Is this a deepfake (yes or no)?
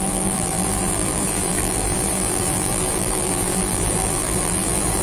yes